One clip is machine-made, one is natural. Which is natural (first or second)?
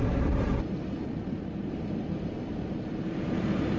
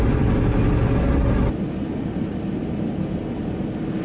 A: second